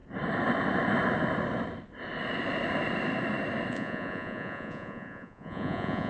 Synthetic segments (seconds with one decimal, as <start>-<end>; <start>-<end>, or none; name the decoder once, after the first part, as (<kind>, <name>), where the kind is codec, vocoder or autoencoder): 3.7-6.1 (vocoder, Vocos)